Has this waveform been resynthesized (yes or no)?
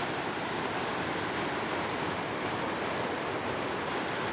no